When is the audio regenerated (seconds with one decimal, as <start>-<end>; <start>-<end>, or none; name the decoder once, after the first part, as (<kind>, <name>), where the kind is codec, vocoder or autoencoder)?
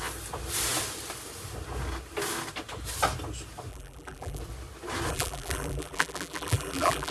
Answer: 3.7-4.4 (vocoder, BigVGAN v2); 5.1-7.1